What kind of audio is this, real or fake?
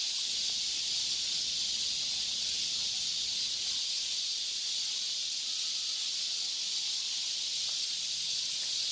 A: real